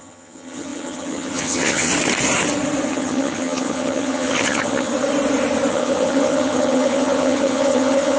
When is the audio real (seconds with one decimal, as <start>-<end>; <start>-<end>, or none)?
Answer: 1.9-2.9; 4.9-5.7